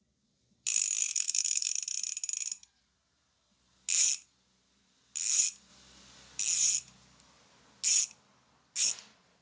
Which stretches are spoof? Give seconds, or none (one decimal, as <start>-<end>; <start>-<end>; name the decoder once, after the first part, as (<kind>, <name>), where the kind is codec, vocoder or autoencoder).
1.0-1.7 (codec, SNAC)